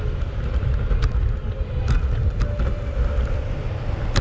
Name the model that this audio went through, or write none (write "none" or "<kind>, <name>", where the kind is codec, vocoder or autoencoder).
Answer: none